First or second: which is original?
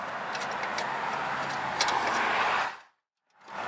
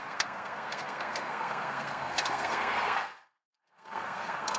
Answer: first